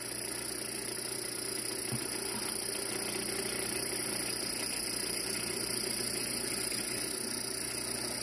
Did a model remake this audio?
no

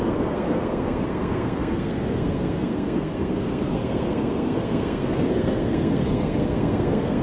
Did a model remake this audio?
yes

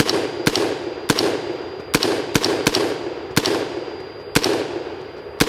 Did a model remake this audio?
no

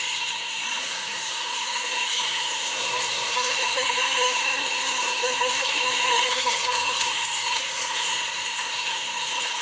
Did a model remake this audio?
yes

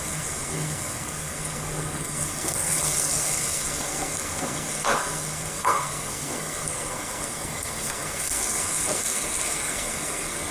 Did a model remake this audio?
yes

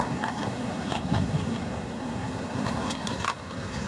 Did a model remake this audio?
yes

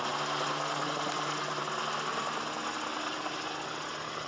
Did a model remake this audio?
no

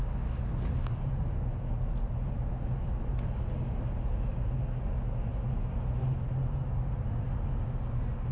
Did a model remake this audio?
no